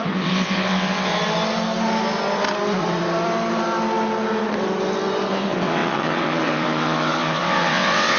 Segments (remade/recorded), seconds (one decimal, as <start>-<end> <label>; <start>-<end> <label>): 0.0-1.1 remade; 1.1-5.3 recorded; 5.3-8.2 remade